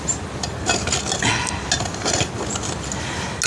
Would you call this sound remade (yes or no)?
no